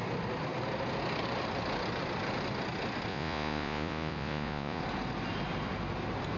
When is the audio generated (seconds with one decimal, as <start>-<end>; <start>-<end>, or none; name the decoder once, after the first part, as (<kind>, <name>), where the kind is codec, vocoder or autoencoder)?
3.1-4.8 (vocoder, Vocos)